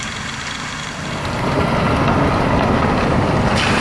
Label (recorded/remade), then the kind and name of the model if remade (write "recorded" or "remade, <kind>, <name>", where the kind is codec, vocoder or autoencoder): recorded